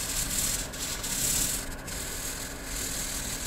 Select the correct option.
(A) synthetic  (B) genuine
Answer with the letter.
B